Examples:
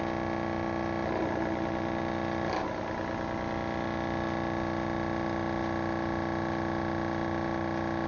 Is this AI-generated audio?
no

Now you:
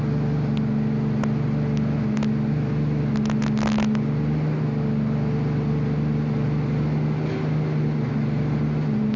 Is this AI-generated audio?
no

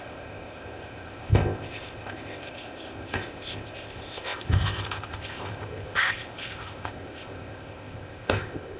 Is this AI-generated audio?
yes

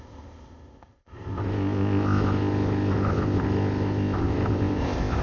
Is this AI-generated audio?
yes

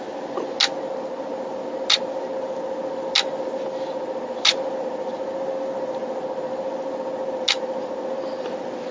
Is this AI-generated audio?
no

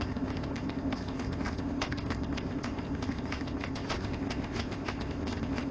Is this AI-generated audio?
yes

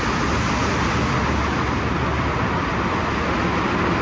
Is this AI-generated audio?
no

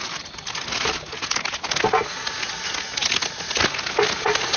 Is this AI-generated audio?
no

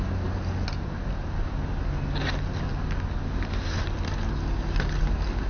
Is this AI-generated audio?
no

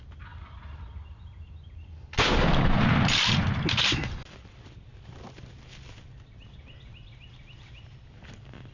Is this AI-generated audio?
no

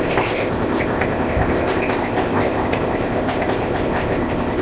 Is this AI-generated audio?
yes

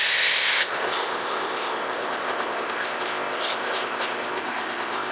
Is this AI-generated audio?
yes